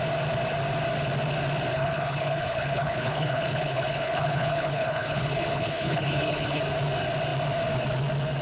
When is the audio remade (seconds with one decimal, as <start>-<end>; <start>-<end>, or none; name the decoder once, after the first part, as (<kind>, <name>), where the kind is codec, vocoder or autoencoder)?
1.7-6.6 (codec, HILCodec)